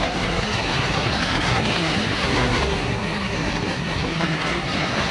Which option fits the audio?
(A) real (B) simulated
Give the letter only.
B